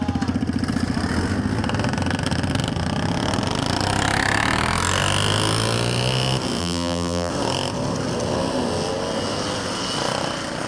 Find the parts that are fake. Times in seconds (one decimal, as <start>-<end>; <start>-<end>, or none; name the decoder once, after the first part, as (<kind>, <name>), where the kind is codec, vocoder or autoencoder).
6.6-7.3 (vocoder, BigVGAN v2)